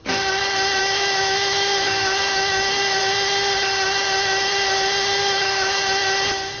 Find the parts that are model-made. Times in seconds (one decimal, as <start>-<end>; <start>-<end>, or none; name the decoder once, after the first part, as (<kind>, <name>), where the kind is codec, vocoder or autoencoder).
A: 0.8-3.0 (autoencoder, DAC-VAE); 5.2-5.8